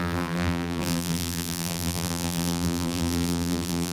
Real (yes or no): no